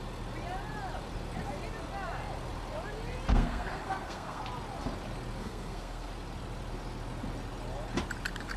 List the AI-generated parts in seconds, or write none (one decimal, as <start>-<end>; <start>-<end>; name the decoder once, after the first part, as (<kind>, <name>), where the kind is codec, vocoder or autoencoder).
3.3-4.4 (codec, SNAC); 5.4-6.1